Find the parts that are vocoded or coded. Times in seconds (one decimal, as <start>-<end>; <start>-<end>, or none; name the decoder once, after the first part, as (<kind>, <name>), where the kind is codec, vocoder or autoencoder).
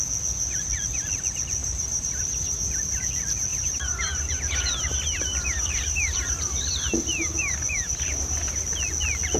1.6-3.1 (vocoder, BigVGAN v2); 3.5-8.6